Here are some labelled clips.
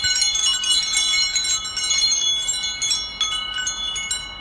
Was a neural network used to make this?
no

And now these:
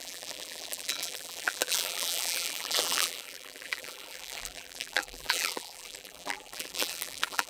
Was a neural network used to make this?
yes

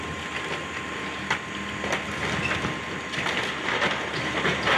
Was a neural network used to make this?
no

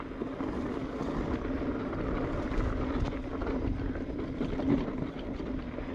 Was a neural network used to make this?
no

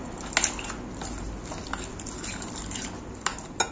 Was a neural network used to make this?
no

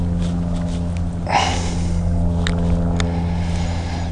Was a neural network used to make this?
no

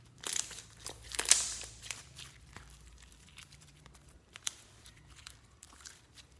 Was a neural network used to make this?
yes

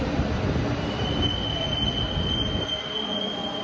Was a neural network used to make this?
no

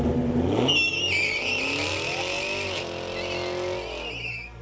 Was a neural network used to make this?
no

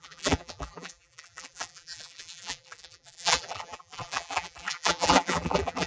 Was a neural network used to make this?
yes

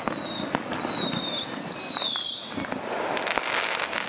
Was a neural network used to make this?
no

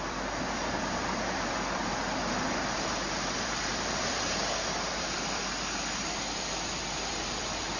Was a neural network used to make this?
yes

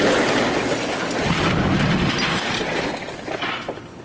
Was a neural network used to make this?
no